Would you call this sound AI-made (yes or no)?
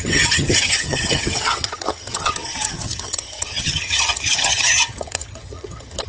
yes